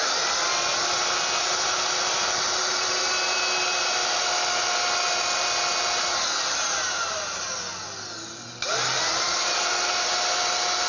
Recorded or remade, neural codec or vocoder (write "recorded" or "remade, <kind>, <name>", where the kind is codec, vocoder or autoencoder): recorded